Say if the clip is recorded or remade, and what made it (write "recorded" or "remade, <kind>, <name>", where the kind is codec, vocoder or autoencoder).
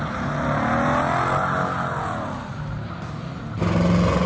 recorded